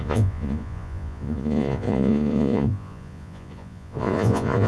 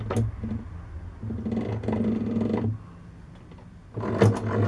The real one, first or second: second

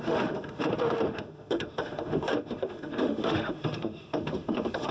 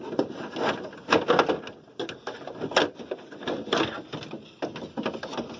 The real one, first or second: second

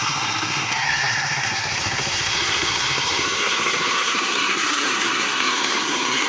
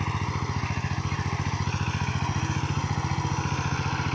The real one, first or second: second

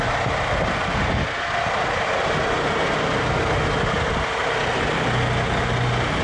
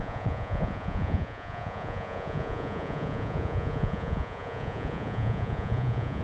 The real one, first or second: first